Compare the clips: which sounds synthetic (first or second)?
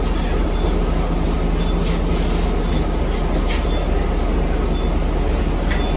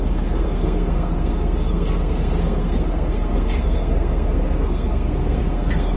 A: second